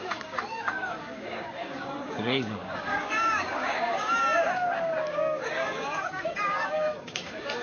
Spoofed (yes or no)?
yes